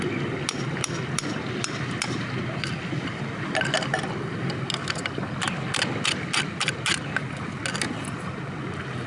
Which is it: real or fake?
real